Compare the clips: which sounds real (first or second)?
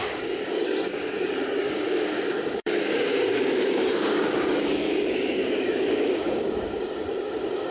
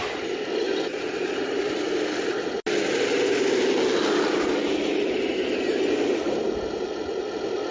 second